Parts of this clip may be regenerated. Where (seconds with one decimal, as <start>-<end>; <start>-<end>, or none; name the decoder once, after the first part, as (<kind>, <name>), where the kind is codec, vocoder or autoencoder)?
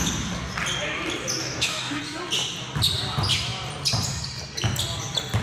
1.4-2.0 (codec, DAC)